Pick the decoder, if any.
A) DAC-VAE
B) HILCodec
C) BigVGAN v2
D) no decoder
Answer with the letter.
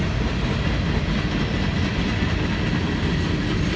D